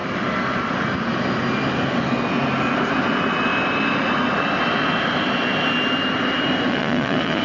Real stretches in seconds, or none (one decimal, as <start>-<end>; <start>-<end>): 0.0-6.7

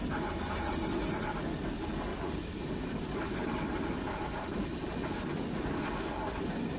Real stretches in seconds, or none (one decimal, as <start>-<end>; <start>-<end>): 0.0-2.1; 5.9-6.8